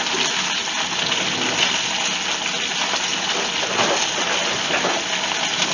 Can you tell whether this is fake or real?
real